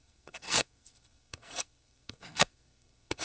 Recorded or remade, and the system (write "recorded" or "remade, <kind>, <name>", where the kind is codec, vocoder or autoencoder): remade, codec, SNAC